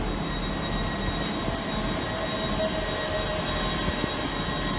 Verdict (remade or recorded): recorded